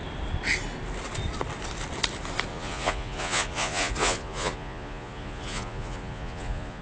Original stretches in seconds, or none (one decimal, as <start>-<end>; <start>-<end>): 0.0-2.5